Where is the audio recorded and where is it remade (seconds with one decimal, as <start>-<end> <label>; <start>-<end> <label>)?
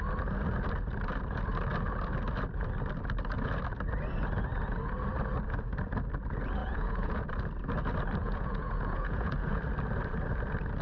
0.0-6.6 recorded; 6.6-7.2 remade; 7.2-8.2 recorded; 8.2-9.6 remade; 9.6-10.8 recorded